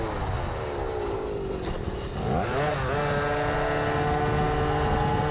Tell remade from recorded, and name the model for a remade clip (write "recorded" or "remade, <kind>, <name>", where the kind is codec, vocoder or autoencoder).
recorded